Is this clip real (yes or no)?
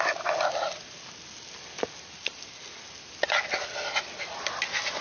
yes